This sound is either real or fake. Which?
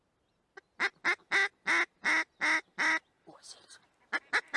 real